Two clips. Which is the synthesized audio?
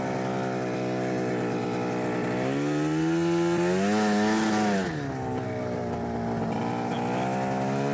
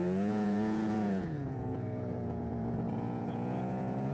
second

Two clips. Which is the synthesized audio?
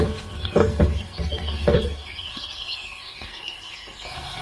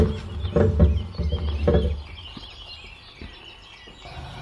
first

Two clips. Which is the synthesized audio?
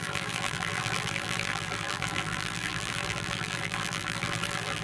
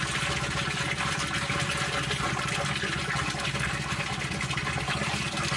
first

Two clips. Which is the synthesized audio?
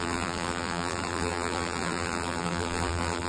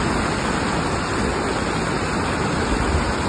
first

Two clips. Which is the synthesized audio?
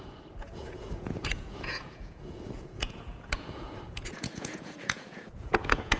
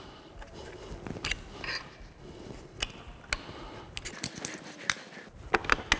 first